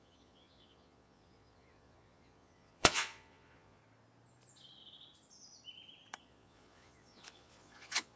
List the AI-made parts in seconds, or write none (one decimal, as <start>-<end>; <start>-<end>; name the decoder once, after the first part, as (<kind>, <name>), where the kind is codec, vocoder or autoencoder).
0.0-3.8 (vocoder, Vocos); 6.2-8.2